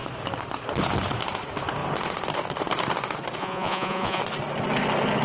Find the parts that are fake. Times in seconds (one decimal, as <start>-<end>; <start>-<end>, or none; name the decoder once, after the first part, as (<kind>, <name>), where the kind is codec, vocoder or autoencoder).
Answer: 3.4-4.2 (vocoder, Vocos)

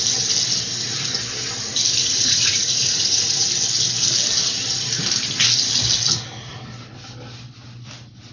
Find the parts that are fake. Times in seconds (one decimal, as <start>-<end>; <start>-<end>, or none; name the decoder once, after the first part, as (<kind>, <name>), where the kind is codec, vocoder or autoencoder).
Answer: 2.0-3.5 (vocoder, Vocos)

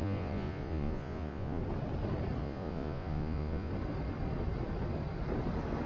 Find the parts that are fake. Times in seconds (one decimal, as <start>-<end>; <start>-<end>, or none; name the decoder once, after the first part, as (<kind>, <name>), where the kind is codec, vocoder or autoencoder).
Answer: 0.0-1.6 (vocoder, Vocos); 2.4-3.7